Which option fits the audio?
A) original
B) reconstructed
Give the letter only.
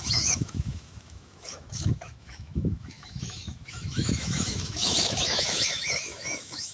B